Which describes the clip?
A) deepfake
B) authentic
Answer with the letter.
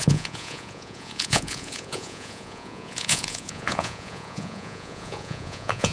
A